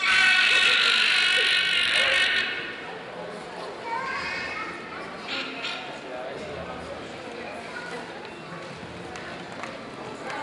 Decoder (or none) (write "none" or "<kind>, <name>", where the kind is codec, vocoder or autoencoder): none